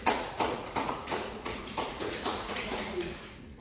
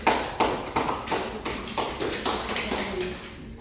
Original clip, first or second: second